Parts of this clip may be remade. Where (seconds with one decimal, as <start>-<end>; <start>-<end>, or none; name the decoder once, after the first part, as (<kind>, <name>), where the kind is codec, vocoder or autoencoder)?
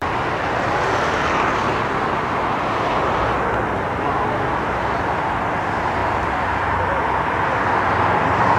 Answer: none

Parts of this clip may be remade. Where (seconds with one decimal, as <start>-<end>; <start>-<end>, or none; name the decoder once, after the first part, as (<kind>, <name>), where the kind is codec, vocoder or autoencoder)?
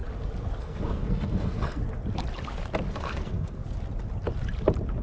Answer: 0.6-1.8 (codec, SNAC); 2.9-3.6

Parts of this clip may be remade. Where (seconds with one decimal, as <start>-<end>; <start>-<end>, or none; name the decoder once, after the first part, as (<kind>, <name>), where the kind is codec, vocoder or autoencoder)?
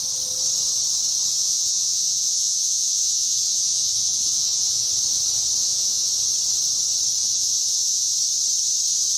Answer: 1.3-4.9 (vocoder, Vocos); 5.6-6.1; 7.2-8.1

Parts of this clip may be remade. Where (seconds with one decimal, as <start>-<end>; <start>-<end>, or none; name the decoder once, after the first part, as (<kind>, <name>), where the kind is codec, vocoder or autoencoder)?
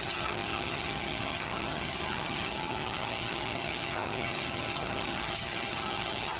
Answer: 0.0-6.4 (vocoder, HiFi-GAN)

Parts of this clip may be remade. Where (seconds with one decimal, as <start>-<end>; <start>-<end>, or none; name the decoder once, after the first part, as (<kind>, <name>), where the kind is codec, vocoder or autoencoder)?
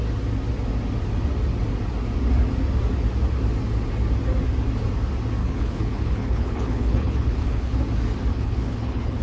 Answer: 5.4-7.8 (codec, HILCodec); 8.3-9.2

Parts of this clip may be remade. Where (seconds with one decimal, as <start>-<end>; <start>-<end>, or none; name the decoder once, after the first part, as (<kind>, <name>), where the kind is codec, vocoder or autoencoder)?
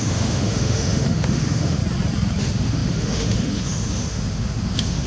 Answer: 0.0-1.8 (autoencoder, DAC-VAE); 2.4-5.1